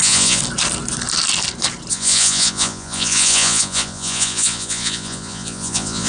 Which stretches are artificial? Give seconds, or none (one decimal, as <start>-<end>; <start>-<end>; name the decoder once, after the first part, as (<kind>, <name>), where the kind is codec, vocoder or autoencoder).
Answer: 0.0-0.4 (vocoder, Vocos); 1.9-6.1